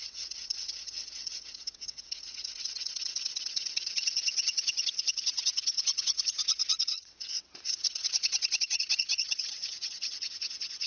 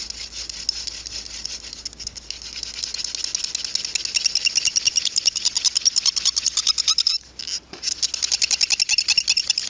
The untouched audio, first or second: second